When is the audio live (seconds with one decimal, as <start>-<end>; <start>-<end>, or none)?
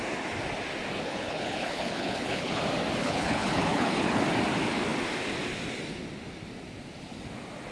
0.0-1.1; 2.6-3.0; 4.2-7.7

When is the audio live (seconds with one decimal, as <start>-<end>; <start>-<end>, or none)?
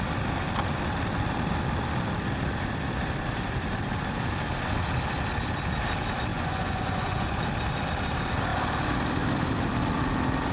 0.0-6.3; 7.4-10.5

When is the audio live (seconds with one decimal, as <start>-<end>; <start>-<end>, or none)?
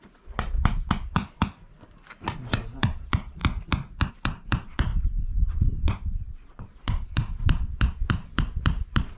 1.2-2.5; 3.4-4.1; 4.9-5.5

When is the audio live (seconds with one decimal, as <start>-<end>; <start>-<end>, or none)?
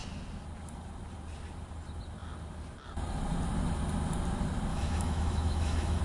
0.0-4.7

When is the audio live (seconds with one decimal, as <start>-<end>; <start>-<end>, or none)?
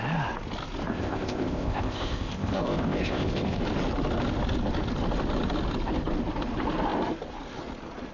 0.0-0.9; 3.6-8.1